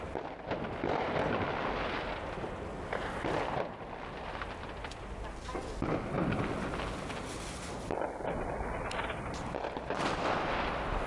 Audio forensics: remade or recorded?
recorded